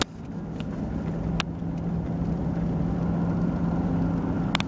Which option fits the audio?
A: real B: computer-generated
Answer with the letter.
A